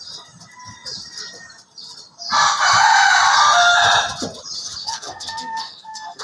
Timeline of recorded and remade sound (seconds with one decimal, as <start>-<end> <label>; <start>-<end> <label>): 0.0-4.8 recorded; 4.8-6.2 remade